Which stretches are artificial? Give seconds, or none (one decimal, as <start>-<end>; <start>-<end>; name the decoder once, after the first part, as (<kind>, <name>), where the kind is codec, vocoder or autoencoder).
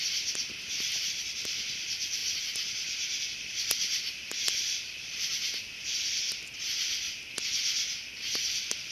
0.0-2.2 (vocoder, BigVGAN v2); 3.2-5.3; 8.2-8.9